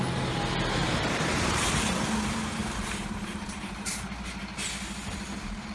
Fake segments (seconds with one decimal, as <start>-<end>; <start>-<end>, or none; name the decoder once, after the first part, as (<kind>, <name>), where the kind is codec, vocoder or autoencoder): 0.8-1.7 (vocoder, BigVGAN v2); 2.6-4.4